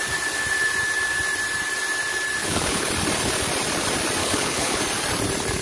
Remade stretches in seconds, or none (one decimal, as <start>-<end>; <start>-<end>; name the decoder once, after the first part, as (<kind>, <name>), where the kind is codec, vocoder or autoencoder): 2.4-2.9 (codec, HILCodec); 4.2-4.8